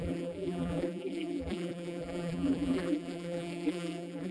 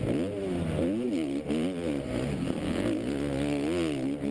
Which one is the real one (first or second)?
second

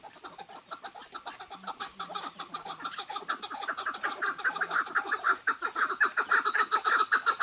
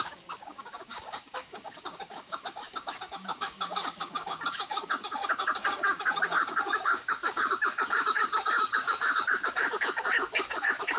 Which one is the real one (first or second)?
first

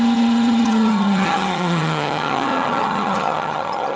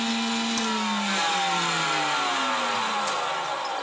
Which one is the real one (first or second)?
second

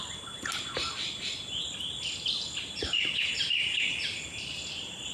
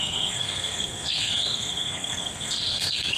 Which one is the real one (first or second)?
first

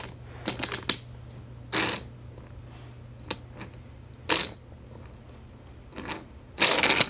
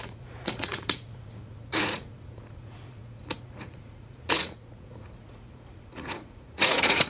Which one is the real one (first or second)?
first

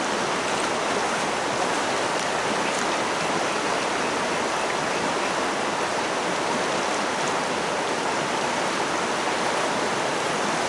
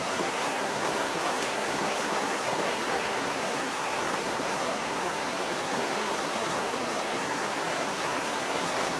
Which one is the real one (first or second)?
first